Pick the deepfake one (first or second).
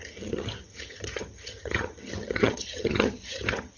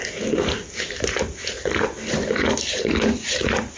first